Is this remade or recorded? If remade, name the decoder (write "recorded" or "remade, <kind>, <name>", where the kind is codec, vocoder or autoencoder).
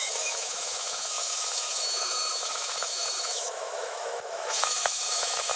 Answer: remade, autoencoder, DAC-VAE